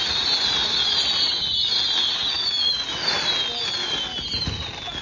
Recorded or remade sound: recorded